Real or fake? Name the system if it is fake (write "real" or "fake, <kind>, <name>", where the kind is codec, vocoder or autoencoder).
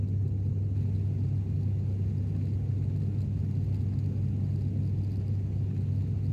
real